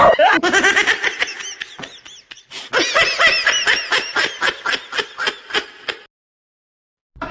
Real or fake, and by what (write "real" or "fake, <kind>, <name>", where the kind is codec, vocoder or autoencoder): real